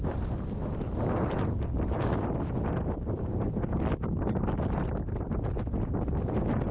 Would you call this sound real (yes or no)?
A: yes